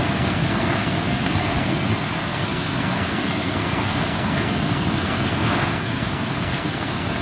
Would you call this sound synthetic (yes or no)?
yes